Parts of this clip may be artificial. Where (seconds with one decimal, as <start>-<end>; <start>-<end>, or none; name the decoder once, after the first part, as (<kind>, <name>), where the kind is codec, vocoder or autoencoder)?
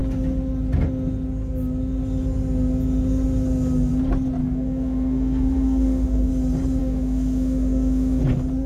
4.4-6.3 (autoencoder, DAC-VAE); 6.8-8.2